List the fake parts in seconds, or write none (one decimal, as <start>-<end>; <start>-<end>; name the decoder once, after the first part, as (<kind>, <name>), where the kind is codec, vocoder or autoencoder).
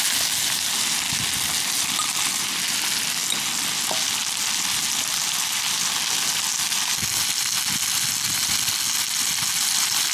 none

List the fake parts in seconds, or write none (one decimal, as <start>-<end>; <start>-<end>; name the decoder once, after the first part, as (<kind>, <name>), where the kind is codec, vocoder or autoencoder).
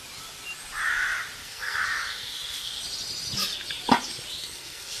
1.4-2.8 (codec, SNAC); 4.4-5.0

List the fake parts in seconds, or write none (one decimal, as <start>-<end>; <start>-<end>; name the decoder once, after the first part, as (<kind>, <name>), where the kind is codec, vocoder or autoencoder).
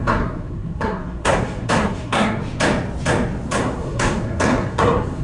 0.0-2.4 (codec, SNAC); 3.6-5.2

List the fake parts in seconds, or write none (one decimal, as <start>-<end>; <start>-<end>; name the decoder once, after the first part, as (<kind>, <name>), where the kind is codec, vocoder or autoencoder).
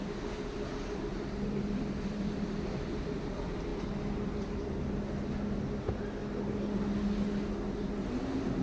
none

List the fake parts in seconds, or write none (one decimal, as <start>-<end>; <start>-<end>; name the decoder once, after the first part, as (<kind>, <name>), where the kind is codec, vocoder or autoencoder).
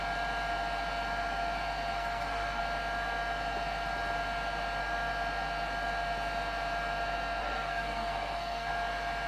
1.9-2.6 (codec, SNAC); 7.4-8.7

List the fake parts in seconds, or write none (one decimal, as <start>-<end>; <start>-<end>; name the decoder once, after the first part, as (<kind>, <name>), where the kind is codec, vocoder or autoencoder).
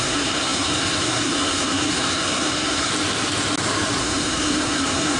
0.0-2.9 (codec, SNAC); 4.0-5.2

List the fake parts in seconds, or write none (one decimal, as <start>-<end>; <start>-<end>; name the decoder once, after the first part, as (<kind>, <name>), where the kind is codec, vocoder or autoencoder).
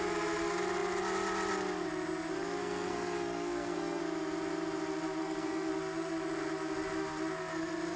2.6-4.0 (codec, SNAC); 5.2-5.7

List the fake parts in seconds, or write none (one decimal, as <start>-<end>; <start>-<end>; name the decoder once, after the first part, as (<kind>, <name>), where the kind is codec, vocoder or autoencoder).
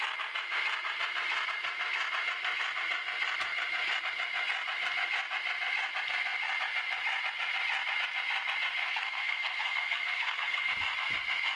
8.8-10.7 (codec, SNAC)